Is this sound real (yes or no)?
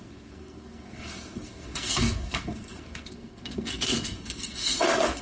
no